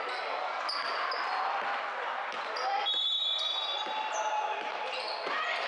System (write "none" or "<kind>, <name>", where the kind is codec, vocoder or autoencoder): none